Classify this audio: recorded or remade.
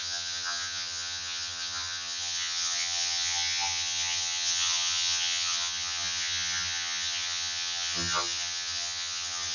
remade